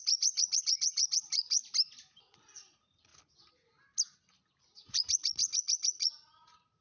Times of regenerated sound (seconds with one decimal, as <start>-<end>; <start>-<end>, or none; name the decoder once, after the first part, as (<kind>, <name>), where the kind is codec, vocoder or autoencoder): 0.0-1.6 (vocoder, Vocos); 2.2-3.1; 4.6-6.8